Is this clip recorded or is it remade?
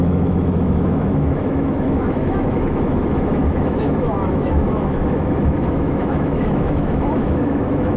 remade